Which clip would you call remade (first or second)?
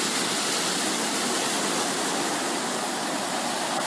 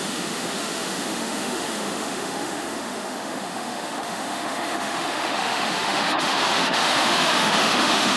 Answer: second